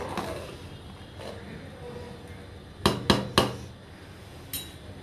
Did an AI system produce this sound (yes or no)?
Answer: no